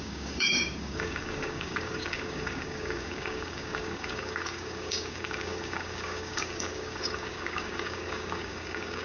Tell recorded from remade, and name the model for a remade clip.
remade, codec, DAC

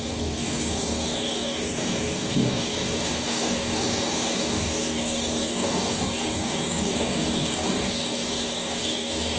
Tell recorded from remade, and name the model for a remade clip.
remade, codec, DAC